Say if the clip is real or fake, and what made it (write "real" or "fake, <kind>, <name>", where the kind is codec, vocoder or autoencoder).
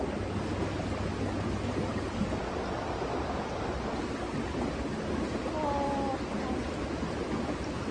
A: real